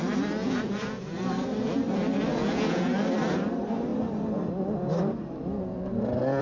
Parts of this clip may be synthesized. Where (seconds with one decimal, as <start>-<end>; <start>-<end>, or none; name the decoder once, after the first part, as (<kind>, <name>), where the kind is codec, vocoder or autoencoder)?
0.4-1.0 (vocoder, Vocos); 2.4-2.9